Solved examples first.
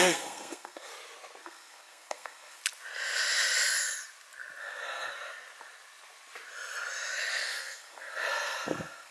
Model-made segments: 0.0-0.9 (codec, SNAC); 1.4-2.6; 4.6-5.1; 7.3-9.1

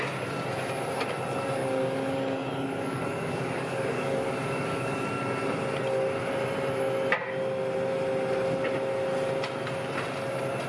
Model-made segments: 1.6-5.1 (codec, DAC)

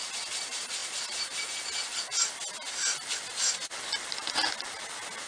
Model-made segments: none

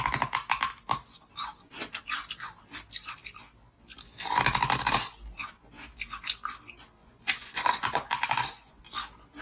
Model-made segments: 7.0-8.8 (vocoder, Vocos)

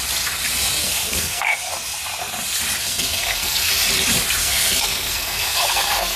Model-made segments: 0.8-1.7 (codec, SNAC); 2.8-3.7; 4.4-6.2